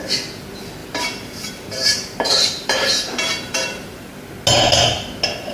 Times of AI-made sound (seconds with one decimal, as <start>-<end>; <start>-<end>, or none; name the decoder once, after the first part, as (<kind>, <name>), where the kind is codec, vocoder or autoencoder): 0.8-4.1 (vocoder, BigVGAN v2)